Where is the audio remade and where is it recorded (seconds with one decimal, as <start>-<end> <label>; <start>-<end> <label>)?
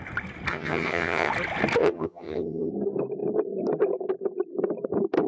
0.0-0.5 recorded; 0.5-1.3 remade; 1.3-1.8 recorded; 1.8-2.7 remade; 2.7-5.3 recorded